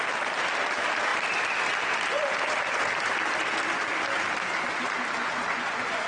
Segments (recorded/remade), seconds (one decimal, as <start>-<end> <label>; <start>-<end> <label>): 0.0-5.2 recorded; 5.2-6.1 remade